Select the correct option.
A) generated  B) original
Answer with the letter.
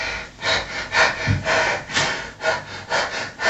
B